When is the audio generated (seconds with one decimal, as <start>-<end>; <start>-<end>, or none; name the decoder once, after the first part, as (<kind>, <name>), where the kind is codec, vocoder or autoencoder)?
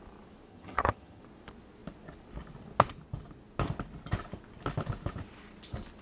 0.5-1.2 (vocoder, HiFi-GAN)